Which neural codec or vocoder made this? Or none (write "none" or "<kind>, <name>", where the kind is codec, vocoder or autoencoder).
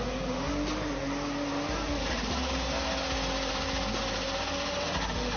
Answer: none